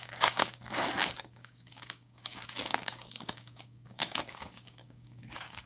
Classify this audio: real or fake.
fake